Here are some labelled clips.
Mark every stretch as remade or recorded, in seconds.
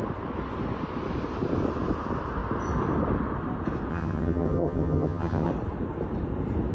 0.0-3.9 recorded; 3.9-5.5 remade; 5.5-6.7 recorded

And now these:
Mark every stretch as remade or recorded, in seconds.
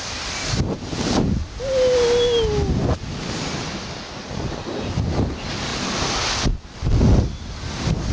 0.0-8.1 recorded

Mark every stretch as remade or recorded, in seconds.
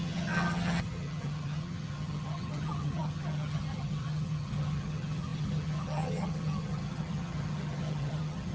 0.0-8.5 remade